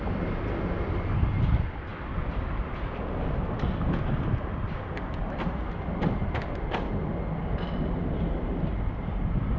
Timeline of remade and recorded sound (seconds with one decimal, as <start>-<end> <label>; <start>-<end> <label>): 0.0-9.6 recorded